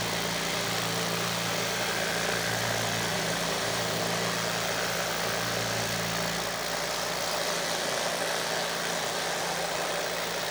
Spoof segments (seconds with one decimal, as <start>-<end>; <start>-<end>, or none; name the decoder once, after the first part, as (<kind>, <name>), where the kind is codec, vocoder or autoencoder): 3.1-4.0 (vocoder, BigVGAN v2)

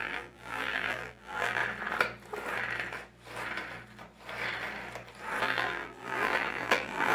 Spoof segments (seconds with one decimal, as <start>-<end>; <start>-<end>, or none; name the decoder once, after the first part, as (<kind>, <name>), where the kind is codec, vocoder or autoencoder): 0.0-1.6 (vocoder, BigVGAN v2); 5.4-7.1

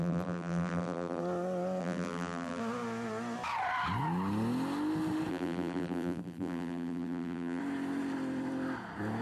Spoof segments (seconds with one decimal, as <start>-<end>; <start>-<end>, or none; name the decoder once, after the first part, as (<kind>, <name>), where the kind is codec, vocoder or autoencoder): 0.0-1.2 (vocoder, BigVGAN v2); 1.8-2.6; 5.3-7.6

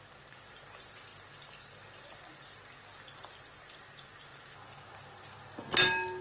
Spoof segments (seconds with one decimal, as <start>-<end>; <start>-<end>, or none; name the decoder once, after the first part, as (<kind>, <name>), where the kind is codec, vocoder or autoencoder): none

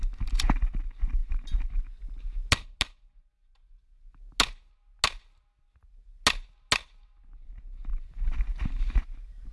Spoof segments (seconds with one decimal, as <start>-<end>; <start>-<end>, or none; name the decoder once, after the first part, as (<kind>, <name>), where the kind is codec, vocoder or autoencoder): 7.9-8.7 (vocoder, BigVGAN v2)

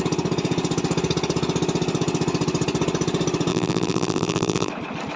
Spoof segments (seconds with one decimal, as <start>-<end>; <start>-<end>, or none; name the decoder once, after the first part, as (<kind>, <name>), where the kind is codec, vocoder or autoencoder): 3.5-4.7 (vocoder, BigVGAN v2)

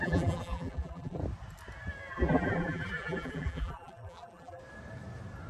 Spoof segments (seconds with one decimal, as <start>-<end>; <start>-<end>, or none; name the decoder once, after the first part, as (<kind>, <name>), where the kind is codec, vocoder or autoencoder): 0.0-1.2 (vocoder, BigVGAN v2); 2.1-4.6